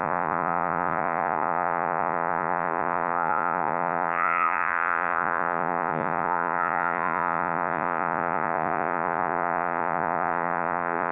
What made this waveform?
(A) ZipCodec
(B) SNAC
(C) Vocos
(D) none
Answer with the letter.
C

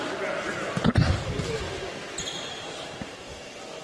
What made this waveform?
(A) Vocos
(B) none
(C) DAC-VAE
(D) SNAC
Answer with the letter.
B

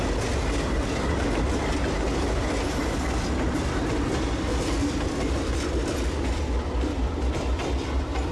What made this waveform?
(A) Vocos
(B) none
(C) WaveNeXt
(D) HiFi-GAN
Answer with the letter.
B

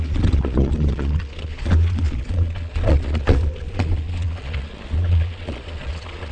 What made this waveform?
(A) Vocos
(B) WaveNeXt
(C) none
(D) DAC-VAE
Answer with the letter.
A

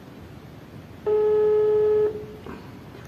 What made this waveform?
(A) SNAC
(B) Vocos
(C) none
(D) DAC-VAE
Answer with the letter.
C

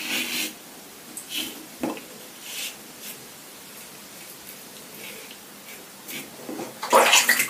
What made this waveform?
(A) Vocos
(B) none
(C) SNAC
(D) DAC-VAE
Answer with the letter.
B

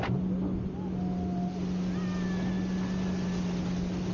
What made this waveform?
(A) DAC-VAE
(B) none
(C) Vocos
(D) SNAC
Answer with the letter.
B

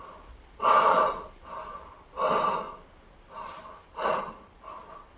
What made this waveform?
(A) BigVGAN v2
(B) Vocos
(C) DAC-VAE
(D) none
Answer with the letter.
D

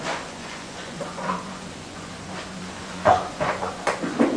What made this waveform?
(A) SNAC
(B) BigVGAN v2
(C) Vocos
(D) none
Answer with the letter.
C